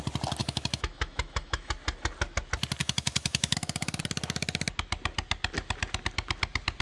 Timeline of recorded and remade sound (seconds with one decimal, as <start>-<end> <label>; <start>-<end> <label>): 0.0-0.4 recorded; 0.4-1.7 remade; 1.7-2.8 recorded; 2.8-4.0 remade; 4.0-6.8 recorded